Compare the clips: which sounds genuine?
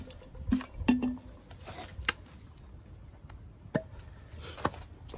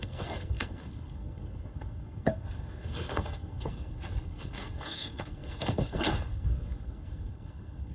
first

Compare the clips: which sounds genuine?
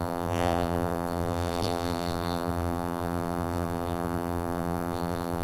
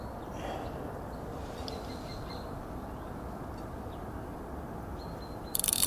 second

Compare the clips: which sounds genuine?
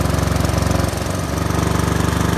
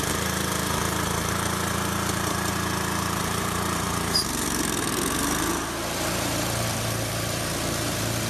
first